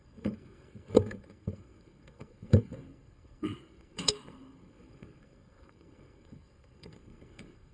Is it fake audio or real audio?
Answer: fake